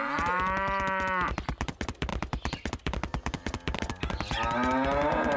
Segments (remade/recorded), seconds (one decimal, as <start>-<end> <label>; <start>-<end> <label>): 0.0-5.4 recorded